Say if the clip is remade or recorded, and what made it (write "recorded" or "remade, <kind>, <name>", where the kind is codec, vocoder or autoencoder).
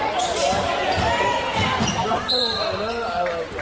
recorded